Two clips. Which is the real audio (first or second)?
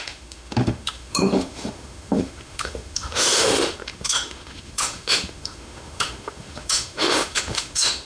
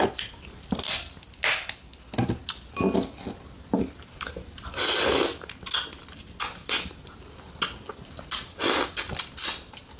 second